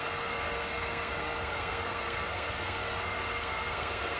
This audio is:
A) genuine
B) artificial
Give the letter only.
B